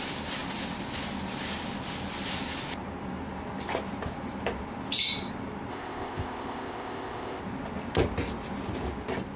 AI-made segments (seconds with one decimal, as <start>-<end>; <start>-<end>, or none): 5.7-7.4